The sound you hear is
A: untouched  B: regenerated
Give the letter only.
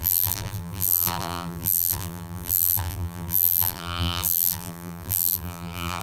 B